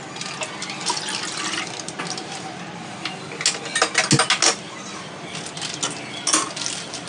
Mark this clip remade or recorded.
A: recorded